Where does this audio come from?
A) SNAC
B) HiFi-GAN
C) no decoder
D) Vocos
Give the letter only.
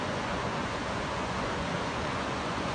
D